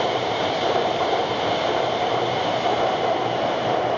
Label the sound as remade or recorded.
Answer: remade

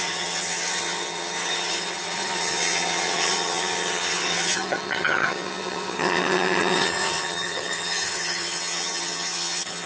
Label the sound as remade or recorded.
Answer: remade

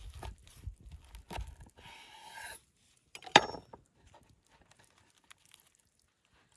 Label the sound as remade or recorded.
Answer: recorded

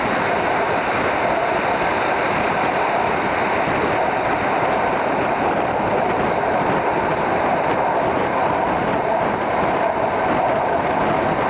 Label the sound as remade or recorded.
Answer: recorded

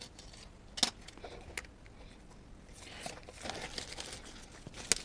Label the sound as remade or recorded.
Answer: recorded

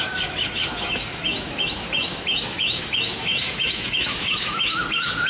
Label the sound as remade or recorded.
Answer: remade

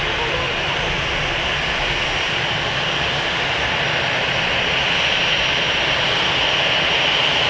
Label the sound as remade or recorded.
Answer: recorded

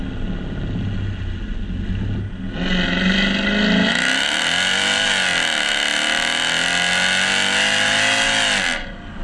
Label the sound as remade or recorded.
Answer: recorded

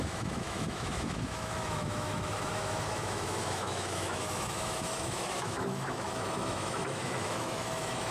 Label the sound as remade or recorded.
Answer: remade